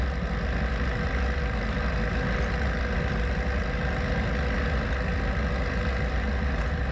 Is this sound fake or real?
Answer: real